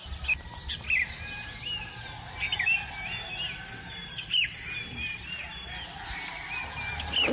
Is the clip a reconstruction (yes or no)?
no